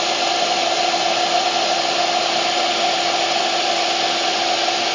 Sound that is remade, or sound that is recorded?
recorded